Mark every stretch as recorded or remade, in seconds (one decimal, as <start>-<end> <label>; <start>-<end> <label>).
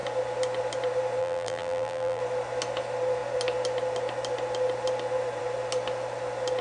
0.0-1.2 recorded; 1.2-2.2 remade; 2.2-6.6 recorded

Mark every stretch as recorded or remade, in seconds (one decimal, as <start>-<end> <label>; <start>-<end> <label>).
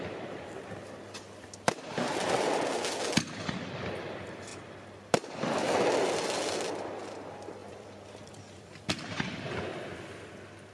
0.0-7.6 recorded; 7.6-8.9 remade; 8.9-10.7 recorded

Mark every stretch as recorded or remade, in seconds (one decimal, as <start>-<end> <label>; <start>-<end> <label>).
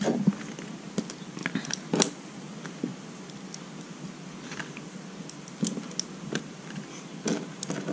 0.0-1.4 recorded; 1.4-2.5 remade; 2.5-7.9 recorded